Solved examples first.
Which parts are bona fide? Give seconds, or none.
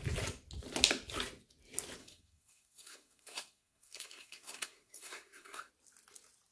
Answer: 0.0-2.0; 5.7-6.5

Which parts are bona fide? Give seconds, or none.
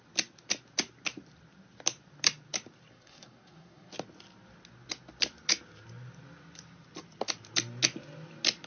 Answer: 0.0-2.9; 3.9-8.7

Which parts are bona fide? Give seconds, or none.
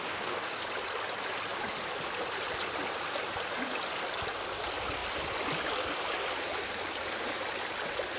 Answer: 0.6-8.2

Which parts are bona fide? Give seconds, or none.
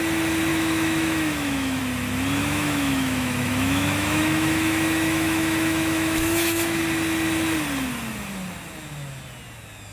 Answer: 0.0-0.5; 1.8-2.4; 6.8-9.9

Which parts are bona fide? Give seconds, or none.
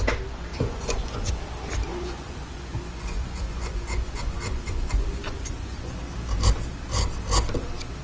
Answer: 0.0-0.5; 1.3-1.9; 6.0-8.0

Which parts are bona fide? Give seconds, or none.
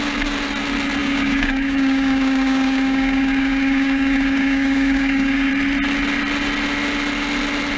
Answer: 0.0-1.0; 5.5-7.8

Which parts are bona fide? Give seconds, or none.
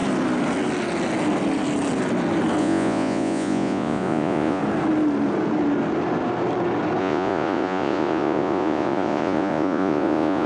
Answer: 0.0-2.6; 4.6-7.0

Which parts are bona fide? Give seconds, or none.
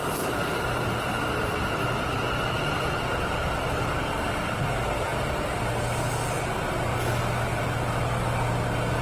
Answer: 3.9-9.0